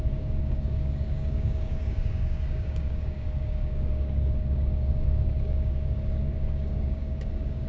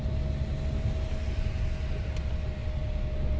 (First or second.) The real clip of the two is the second